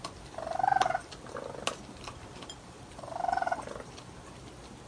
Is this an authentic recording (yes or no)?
yes